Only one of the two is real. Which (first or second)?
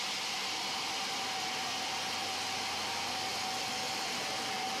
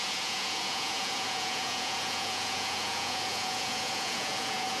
first